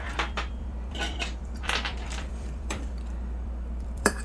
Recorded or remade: remade